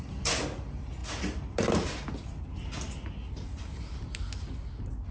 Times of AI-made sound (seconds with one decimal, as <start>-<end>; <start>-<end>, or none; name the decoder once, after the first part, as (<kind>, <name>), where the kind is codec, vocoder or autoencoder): none

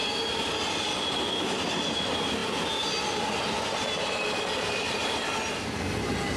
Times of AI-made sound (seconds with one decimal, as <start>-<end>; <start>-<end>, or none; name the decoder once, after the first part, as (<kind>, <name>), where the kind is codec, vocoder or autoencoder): none

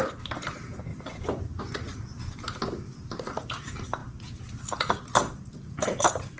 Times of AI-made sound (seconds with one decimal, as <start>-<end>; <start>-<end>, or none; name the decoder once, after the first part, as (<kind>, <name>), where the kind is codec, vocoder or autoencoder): 0.9-1.6 (vocoder, BigVGAN v2); 4.0-6.4

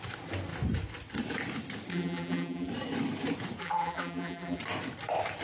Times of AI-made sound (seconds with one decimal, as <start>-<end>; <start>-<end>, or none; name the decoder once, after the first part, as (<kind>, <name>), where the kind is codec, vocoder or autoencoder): 1.9-2.7 (vocoder, BigVGAN v2); 3.6-4.6

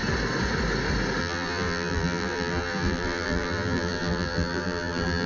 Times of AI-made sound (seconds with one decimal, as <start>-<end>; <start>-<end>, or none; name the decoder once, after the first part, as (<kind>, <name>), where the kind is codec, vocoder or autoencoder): 1.2-5.3 (vocoder, BigVGAN v2)

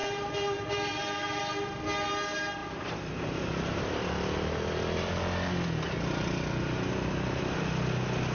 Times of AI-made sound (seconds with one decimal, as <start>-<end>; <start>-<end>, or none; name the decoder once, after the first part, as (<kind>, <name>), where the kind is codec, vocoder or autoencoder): 0.0-1.4 (vocoder, BigVGAN v2); 2.6-3.8

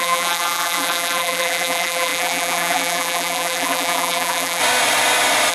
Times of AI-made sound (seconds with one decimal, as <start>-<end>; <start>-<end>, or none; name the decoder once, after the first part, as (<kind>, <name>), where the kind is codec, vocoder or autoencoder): 0.0-4.6 (vocoder, BigVGAN v2)

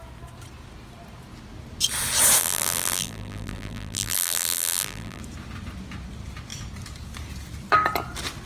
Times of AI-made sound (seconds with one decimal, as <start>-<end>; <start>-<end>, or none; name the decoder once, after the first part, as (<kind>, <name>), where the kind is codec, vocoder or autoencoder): 2.4-5.2 (vocoder, BigVGAN v2)